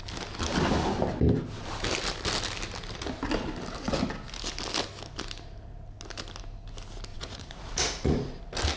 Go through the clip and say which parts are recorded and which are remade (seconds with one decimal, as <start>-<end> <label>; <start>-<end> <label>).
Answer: 0.0-7.1 recorded; 7.1-8.4 remade; 8.4-8.8 recorded